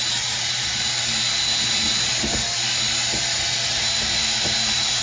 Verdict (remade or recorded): recorded